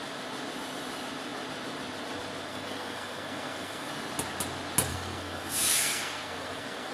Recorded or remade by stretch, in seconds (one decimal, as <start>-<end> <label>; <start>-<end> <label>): 0.0-2.5 recorded; 2.5-3.9 remade; 3.9-4.9 recorded; 4.9-6.9 remade